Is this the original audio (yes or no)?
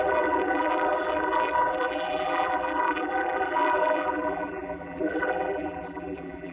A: no